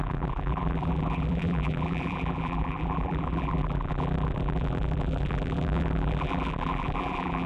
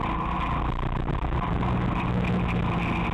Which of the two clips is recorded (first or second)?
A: second